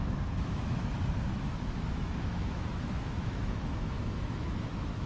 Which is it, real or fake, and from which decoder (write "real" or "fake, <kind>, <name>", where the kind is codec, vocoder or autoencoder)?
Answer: fake, autoencoder, DAC-VAE